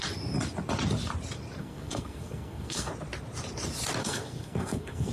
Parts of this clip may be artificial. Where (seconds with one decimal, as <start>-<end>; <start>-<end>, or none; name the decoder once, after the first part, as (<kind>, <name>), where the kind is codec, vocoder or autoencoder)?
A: 1.6-2.9 (codec, SNAC); 4.0-5.1